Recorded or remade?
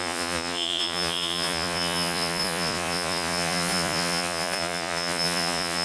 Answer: remade